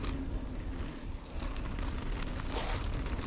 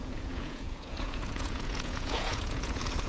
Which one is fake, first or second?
second